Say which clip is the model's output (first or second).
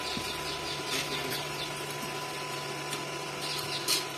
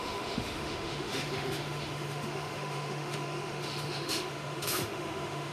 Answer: second